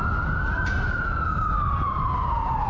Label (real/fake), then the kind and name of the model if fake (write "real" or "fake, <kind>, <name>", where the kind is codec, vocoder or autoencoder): real